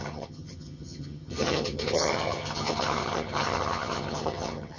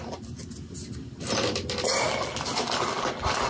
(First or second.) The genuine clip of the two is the second